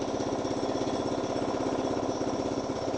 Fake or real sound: real